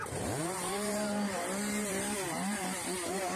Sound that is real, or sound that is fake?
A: fake